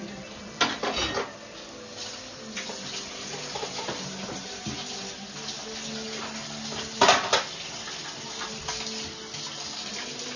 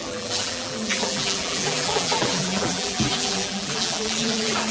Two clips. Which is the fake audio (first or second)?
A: second